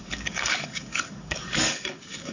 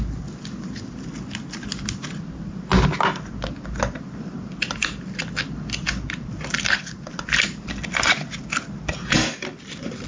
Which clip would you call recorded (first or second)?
second